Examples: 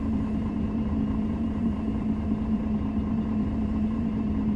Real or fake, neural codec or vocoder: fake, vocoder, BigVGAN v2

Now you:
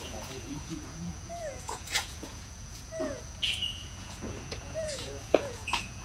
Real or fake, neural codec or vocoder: fake, vocoder, Vocos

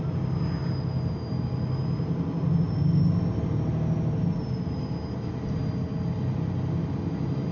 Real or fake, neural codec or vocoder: real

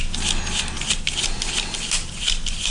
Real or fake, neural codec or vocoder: real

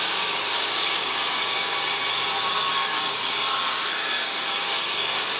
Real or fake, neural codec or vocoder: fake, codec, DAC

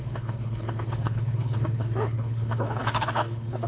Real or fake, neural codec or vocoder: fake, codec, HILCodec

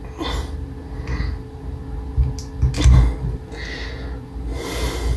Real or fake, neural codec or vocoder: real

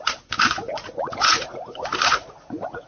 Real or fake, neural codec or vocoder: fake, vocoder, Vocos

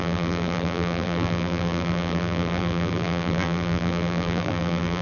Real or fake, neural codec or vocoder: fake, vocoder, BigVGAN v2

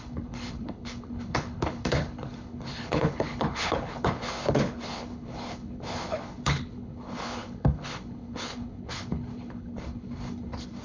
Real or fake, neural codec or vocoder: fake, codec, HILCodec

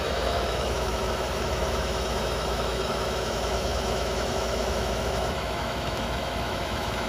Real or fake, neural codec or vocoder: fake, autoencoder, DAC-VAE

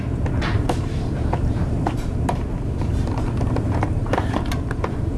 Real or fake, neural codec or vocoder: fake, vocoder, BigVGAN v2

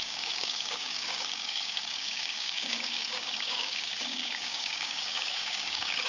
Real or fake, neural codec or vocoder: fake, codec, DAC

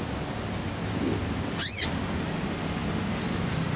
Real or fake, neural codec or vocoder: real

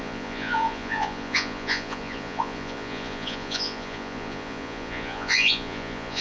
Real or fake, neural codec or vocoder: fake, vocoder, Vocos